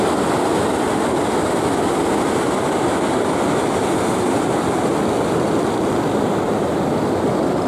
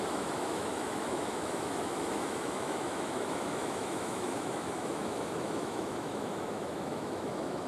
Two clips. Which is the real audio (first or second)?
first